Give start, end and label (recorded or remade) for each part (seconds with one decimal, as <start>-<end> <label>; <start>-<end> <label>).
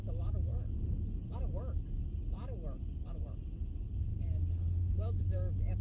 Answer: 0.0-0.5 remade; 0.5-3.6 recorded; 3.6-5.8 remade